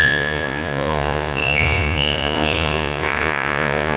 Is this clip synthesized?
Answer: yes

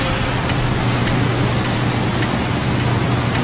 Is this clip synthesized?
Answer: no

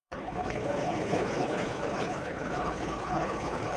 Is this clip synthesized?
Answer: yes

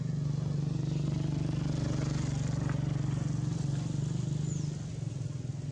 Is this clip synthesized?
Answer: no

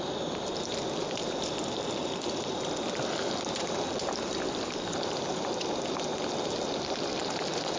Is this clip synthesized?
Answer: no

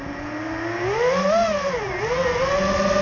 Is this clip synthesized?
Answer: no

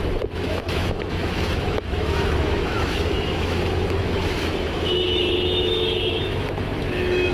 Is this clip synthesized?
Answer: yes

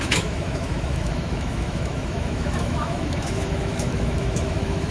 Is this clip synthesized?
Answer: yes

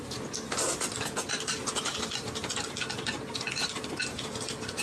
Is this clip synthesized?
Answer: no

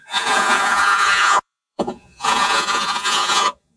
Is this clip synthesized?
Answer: yes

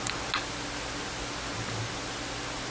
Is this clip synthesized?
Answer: no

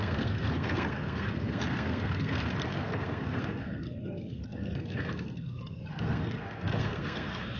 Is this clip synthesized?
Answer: yes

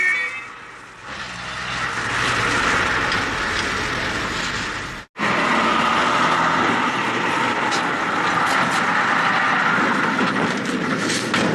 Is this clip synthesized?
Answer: no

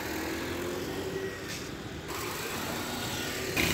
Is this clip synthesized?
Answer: no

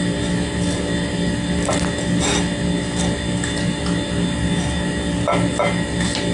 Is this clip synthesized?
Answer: no